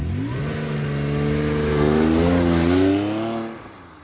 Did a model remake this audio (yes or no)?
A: no